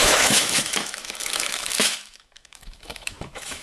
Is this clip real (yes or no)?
no